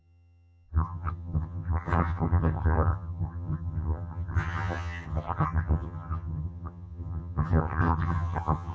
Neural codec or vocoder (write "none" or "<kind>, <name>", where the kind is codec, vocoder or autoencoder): vocoder, HiFi-GAN